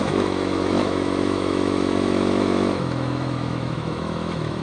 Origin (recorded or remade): remade